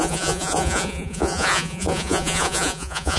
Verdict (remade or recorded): remade